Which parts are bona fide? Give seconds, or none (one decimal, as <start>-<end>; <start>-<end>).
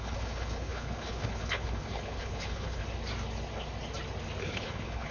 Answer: 2.8-4.4